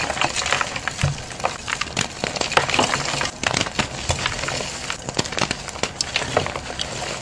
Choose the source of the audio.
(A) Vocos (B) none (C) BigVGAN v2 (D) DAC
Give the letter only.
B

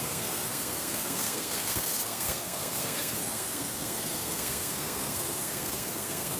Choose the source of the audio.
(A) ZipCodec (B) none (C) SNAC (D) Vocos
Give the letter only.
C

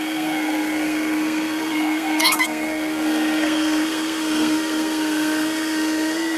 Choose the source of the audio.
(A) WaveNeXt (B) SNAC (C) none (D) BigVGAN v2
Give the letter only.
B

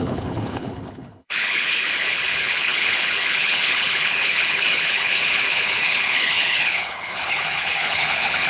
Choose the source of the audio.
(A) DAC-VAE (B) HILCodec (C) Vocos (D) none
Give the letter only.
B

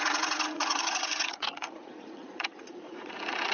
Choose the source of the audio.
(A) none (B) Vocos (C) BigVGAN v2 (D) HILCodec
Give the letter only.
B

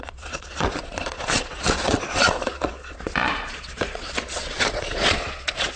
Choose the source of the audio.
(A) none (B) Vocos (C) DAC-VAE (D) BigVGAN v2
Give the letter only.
B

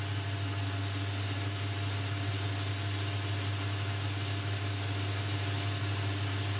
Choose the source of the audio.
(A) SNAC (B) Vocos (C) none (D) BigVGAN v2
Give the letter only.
C